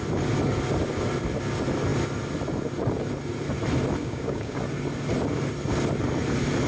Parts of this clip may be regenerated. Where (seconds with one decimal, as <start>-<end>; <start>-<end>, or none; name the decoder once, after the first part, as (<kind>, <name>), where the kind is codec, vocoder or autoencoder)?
4.0-4.6 (codec, DAC)